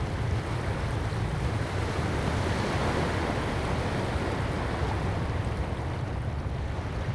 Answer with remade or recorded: recorded